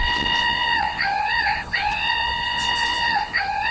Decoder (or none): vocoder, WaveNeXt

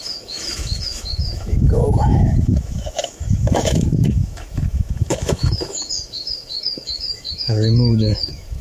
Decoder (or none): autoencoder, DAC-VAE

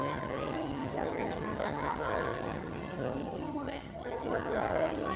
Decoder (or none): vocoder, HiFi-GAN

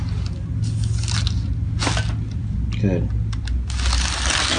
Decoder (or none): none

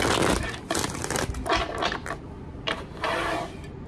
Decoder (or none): none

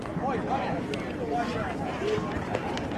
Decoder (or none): none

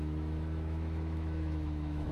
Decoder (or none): autoencoder, DAC-VAE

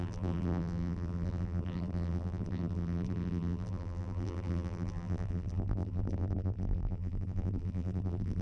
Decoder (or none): vocoder, BigVGAN v2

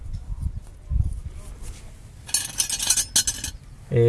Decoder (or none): none